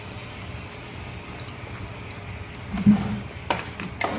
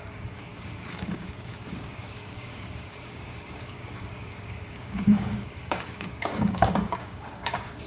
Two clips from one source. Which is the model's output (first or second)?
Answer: second